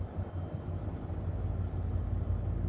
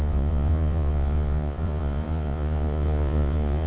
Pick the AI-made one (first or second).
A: second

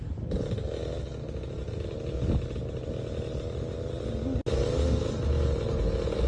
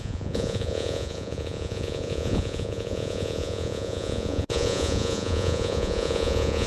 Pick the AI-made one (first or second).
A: second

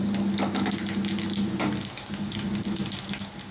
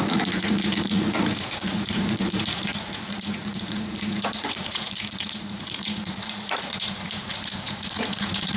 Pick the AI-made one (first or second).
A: second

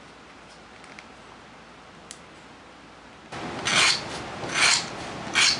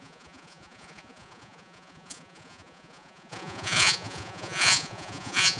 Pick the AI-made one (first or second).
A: second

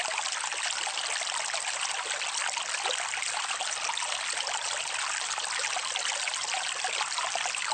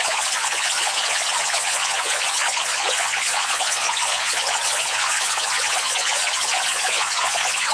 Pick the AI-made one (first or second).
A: second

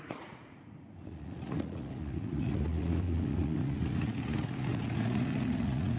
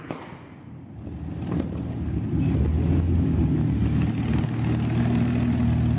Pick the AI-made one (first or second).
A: first